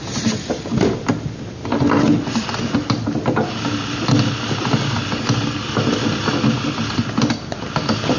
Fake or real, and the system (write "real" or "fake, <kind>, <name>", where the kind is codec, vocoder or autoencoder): real